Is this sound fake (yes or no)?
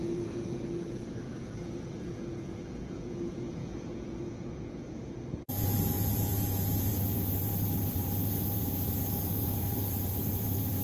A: yes